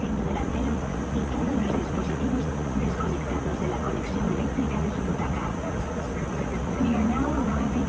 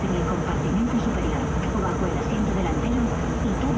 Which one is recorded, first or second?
second